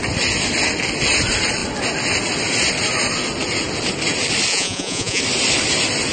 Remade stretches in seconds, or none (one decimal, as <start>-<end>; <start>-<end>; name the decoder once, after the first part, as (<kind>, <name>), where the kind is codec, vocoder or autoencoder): 4.5-5.2 (vocoder, Vocos)

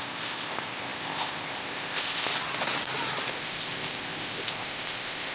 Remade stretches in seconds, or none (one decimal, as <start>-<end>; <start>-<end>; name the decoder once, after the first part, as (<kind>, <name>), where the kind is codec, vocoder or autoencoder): 0.0-2.3 (codec, ZipCodec); 3.3-5.3